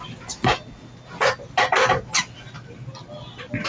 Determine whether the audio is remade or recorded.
recorded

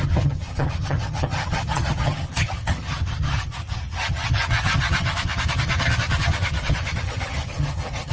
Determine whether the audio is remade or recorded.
remade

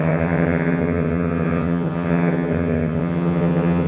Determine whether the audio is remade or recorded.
remade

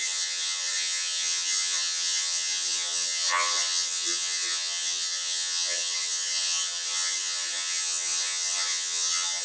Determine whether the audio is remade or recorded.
remade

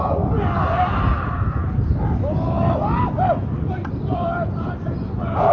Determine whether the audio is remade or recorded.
recorded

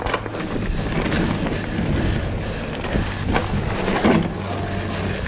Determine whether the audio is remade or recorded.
recorded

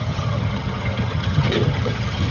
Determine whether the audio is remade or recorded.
remade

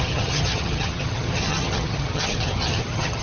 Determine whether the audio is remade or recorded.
remade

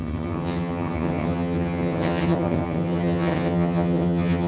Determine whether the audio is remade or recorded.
remade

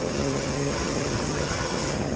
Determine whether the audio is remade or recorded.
remade